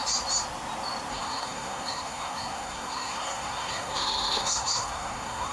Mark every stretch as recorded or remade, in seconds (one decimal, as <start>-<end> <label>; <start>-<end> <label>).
0.0-1.1 recorded; 1.1-5.5 remade